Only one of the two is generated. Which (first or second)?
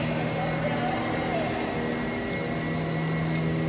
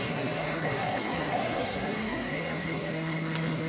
second